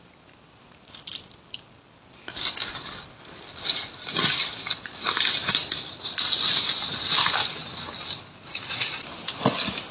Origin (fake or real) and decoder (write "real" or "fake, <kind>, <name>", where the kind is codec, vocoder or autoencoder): real